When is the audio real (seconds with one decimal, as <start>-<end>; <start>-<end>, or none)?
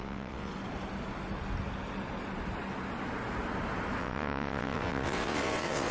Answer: 0.5-4.0